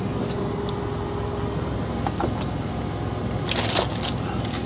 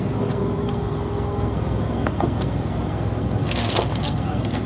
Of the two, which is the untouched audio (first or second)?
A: first